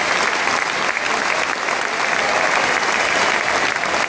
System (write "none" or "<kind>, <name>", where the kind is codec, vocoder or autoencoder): none